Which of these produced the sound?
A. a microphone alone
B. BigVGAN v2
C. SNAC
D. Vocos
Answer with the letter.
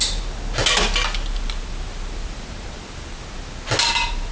A